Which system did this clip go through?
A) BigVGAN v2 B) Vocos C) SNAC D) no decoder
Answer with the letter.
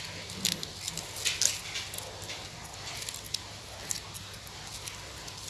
D